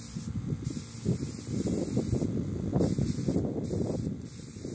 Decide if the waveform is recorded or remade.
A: recorded